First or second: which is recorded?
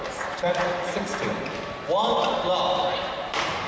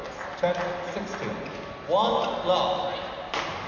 second